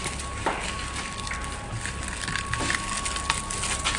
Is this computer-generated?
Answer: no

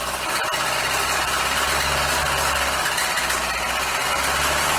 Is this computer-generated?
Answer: no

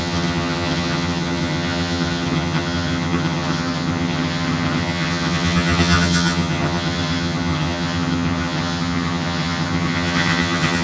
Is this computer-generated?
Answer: yes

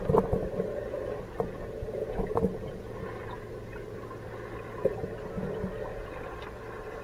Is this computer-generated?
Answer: no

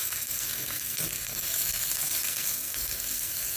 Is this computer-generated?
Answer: yes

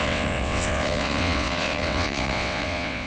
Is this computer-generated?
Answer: yes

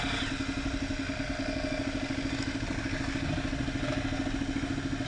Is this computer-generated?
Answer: no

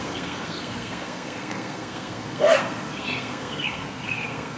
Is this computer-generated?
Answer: yes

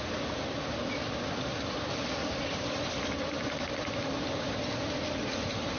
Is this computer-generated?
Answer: no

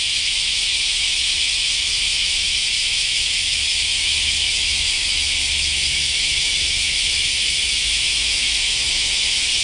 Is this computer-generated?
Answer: yes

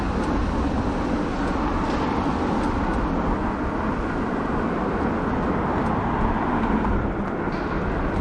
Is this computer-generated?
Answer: no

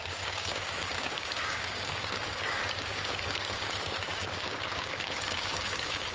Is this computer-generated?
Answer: yes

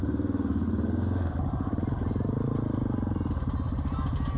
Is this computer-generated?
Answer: no